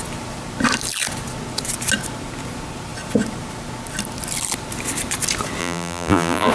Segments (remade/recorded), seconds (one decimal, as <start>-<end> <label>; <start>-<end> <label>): 0.0-5.6 recorded; 5.6-6.5 remade